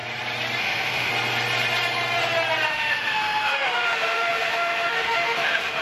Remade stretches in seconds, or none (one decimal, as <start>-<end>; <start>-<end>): 0.6-1.1; 2.7-5.8

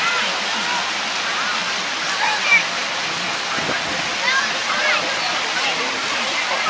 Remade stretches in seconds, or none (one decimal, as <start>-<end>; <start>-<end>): none

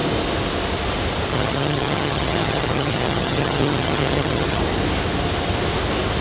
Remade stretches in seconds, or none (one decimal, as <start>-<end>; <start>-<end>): 1.3-4.6

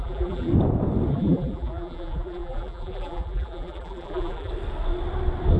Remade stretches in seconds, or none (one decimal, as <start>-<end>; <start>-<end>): 0.0-0.5; 1.1-4.5

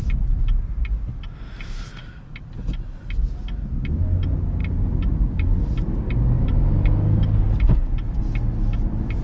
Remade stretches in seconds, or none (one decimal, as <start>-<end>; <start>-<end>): none

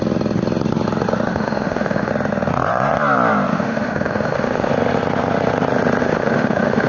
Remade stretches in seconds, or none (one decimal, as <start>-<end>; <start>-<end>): 1.3-2.1; 3.5-4.7; 6.0-6.9